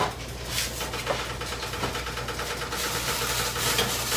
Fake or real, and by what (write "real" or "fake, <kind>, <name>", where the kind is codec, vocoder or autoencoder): real